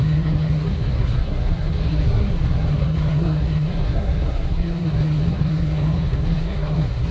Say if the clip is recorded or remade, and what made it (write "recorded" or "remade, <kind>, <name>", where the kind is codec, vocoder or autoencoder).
remade, codec, SNAC